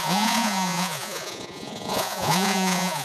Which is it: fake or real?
fake